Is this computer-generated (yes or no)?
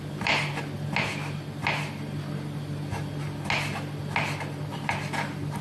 no